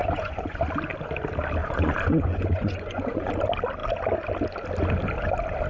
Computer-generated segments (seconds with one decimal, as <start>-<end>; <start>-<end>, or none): 0.0-0.6; 1.6-3.3